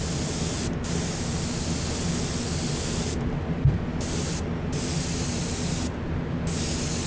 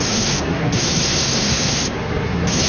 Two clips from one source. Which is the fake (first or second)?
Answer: second